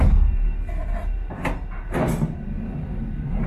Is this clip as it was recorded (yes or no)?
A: yes